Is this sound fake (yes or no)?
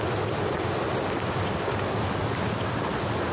no